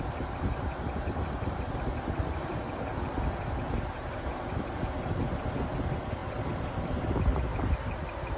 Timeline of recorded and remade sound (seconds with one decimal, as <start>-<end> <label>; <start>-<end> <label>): 0.0-8.4 recorded